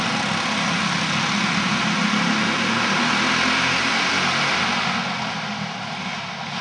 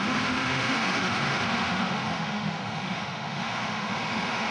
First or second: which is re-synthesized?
second